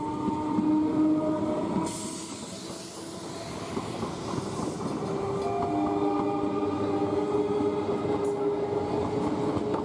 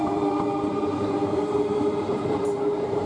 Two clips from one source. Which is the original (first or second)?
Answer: first